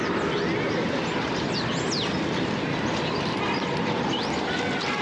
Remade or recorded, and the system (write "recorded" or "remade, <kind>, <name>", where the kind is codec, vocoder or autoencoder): recorded